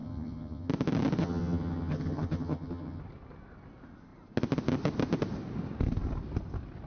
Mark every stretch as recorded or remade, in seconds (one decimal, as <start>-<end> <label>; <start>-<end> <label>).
0.0-0.7 remade; 0.7-1.2 recorded; 1.2-3.0 remade; 3.0-6.9 recorded